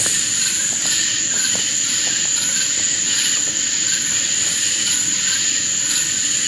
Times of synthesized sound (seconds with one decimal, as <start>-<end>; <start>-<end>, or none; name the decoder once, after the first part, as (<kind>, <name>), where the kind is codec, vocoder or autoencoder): none